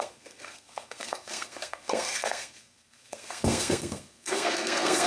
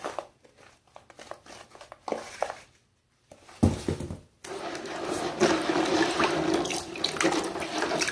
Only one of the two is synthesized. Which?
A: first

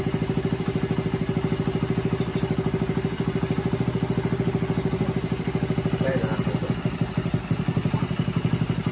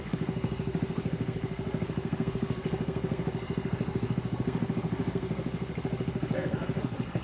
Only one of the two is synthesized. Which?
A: second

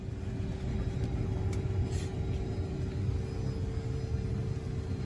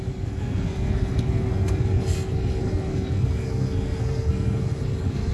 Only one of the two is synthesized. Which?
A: second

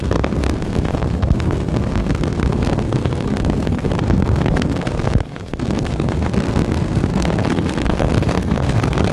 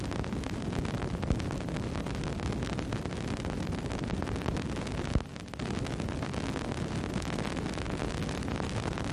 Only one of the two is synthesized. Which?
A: first